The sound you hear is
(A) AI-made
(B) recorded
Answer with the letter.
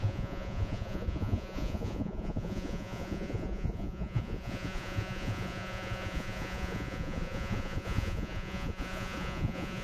A